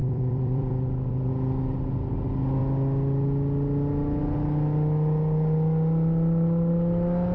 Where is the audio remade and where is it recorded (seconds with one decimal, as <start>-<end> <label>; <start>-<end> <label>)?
0.0-1.3 remade; 1.3-7.3 recorded